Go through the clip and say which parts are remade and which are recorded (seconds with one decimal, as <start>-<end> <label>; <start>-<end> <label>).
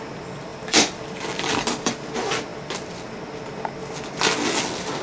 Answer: 0.0-0.5 recorded; 0.5-1.9 remade; 1.9-5.0 recorded